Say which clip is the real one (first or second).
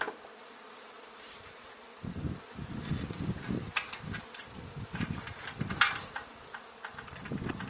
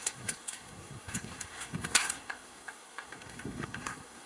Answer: first